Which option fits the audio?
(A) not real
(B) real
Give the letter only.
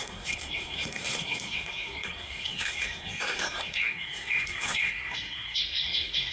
A